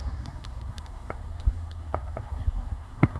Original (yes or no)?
no